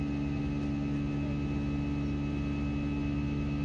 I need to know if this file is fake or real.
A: real